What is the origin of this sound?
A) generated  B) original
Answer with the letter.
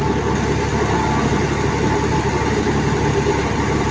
B